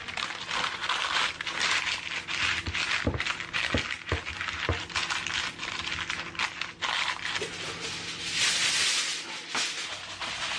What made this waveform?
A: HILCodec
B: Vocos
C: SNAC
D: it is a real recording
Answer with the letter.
D